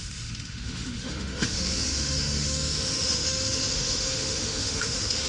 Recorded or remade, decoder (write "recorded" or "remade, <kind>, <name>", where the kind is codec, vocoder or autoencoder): remade, autoencoder, DAC-VAE